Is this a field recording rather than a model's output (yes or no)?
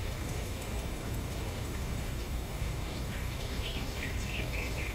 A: no